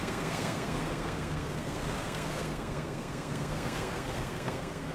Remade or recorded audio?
remade